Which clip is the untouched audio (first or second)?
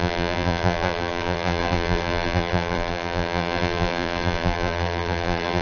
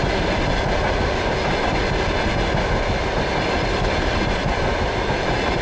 second